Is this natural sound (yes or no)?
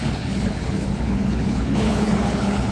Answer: no